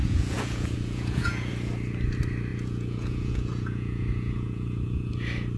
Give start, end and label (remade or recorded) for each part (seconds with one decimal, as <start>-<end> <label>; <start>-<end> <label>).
0.0-1.5 remade; 1.5-2.5 recorded; 2.5-5.1 remade; 5.1-5.6 recorded